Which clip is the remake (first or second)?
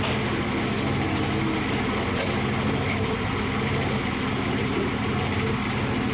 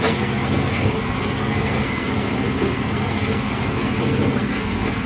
second